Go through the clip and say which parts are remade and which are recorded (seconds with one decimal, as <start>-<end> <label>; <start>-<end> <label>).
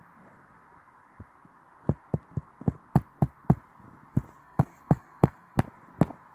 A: 0.0-4.4 recorded; 4.4-5.6 remade; 5.6-6.3 recorded